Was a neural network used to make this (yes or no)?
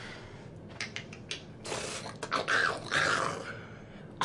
no